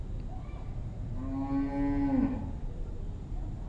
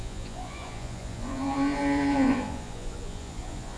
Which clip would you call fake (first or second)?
second